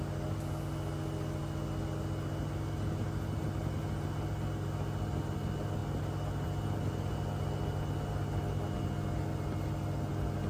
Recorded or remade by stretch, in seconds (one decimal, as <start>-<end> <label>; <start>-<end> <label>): 0.0-10.5 recorded